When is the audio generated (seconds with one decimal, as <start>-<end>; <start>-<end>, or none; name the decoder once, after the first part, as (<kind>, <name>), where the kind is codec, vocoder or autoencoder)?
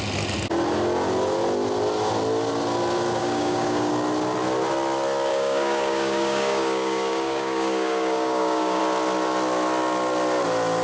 3.2-3.9 (codec, DAC); 5.3-8.8